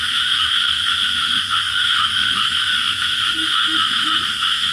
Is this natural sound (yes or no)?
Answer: no